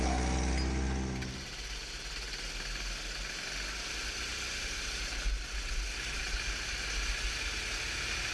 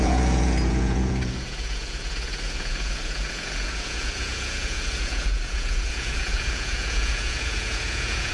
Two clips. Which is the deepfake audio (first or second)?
second